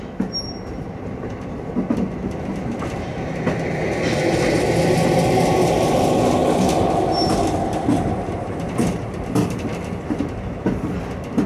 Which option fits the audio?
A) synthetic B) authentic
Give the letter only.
B